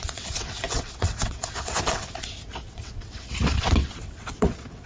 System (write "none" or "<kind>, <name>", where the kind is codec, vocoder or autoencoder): vocoder, WaveNeXt